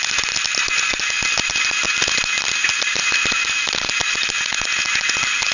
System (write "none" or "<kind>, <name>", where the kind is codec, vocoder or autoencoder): none